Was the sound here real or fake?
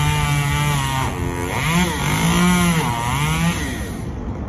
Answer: real